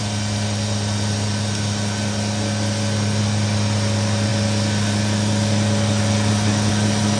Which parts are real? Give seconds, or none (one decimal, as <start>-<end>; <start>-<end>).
0.0-7.2